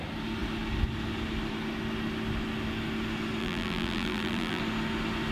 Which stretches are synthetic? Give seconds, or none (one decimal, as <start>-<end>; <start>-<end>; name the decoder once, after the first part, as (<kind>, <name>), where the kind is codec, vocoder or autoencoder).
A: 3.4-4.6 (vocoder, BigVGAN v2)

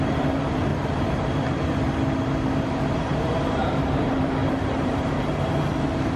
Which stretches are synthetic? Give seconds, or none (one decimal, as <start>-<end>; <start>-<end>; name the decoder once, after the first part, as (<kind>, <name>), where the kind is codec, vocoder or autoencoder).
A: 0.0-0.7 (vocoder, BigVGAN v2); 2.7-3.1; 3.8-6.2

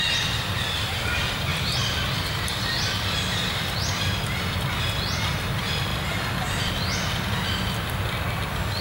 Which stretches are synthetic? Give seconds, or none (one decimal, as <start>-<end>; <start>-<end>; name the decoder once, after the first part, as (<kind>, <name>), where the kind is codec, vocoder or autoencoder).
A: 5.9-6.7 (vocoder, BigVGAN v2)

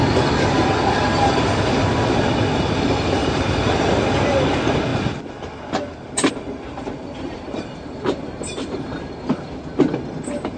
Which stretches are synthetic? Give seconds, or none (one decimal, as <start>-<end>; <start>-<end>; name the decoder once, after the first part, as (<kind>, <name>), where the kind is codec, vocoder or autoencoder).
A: 1.1-1.8 (vocoder, BigVGAN v2); 3.2-3.8; 7.0-9.3

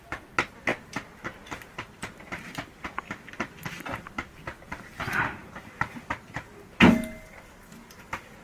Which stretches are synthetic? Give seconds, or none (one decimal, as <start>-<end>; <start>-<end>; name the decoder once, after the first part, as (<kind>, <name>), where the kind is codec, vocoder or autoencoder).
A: 5.4-6.5 (vocoder, BigVGAN v2)

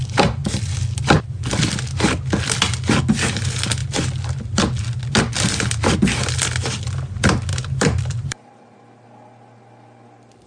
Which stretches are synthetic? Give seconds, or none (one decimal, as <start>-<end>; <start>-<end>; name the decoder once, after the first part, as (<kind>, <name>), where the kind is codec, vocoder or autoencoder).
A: 7.5-8.6 (vocoder, BigVGAN v2)

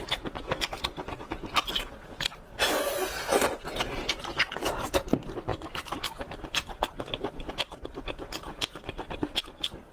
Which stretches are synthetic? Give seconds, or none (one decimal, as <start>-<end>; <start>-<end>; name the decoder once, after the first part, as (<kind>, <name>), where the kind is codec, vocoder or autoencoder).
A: 5.5-7.5 (vocoder, BigVGAN v2)